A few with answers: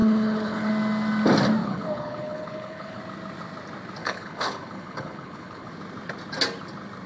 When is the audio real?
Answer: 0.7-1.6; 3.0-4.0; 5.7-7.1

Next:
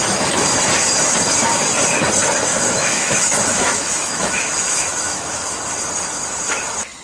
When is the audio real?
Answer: 0.0-2.5; 5.6-7.0

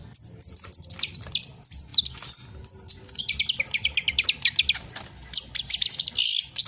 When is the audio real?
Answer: 1.3-6.7

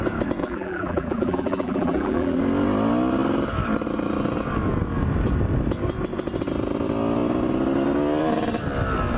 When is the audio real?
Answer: 0.0-0.4; 2.4-9.2

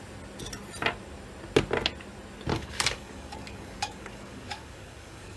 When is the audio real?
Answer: 0.0-2.5

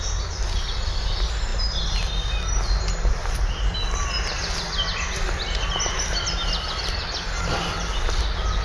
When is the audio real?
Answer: 0.0-8.6